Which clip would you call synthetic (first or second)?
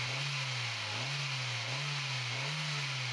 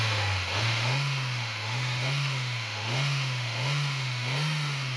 second